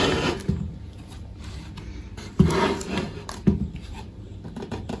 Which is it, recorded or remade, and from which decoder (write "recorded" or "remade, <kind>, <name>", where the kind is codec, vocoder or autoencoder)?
recorded